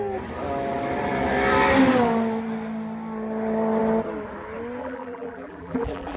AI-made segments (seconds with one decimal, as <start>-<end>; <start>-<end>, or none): 4.8-6.2